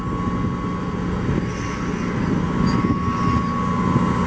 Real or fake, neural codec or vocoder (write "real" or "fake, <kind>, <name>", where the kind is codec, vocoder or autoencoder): real